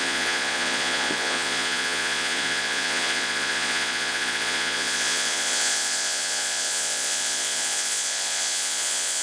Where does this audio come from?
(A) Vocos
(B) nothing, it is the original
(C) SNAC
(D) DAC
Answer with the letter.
A